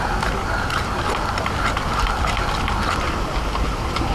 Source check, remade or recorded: recorded